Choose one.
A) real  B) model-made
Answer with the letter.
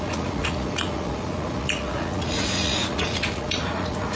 B